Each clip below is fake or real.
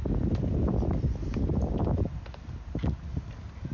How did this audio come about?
real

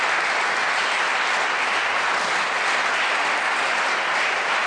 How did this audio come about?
real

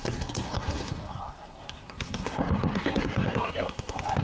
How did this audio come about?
fake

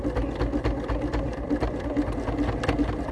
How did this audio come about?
real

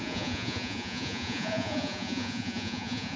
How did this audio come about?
fake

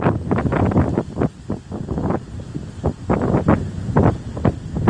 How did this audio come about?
real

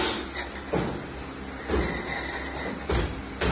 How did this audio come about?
real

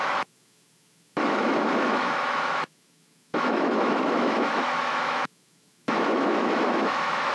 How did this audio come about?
fake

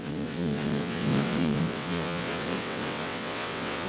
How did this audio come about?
fake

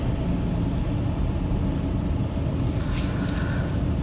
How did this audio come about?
real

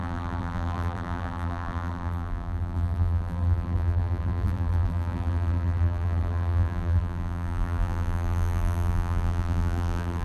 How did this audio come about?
fake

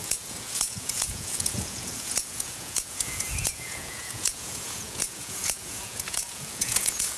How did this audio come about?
fake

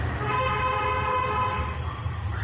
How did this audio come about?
real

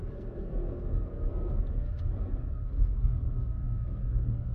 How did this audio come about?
fake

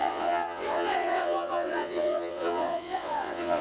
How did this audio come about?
fake